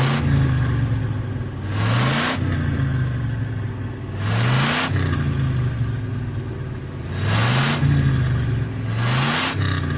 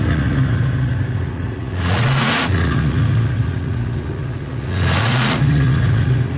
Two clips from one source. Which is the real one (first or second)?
first